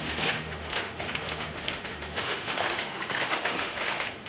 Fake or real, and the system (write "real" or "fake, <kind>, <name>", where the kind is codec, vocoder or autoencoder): fake, autoencoder, DAC-VAE